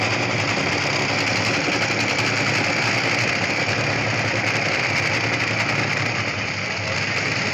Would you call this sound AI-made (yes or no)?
no